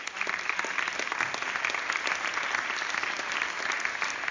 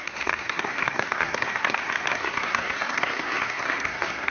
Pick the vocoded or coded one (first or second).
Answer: second